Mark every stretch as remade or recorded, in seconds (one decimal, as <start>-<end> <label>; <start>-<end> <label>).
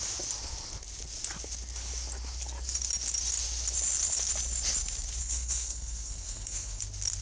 0.0-5.2 recorded; 5.2-6.8 remade; 6.8-7.2 recorded